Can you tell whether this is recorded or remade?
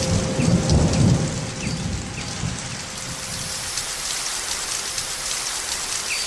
recorded